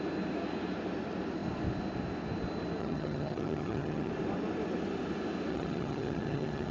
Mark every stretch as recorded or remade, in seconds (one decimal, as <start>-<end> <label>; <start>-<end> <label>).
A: 0.0-2.8 recorded; 2.8-4.1 remade; 4.1-5.5 recorded; 5.5-6.7 remade